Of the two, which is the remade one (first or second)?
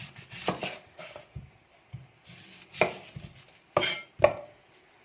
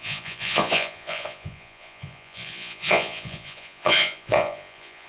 second